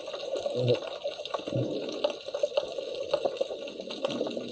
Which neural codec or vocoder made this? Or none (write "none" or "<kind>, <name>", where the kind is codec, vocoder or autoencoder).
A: none